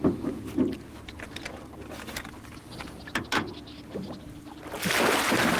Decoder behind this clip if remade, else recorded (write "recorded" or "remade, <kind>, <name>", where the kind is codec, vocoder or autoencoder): recorded